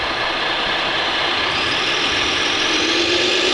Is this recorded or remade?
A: recorded